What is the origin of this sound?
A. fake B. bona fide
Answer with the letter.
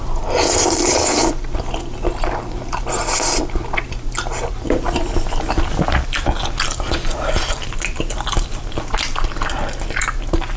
B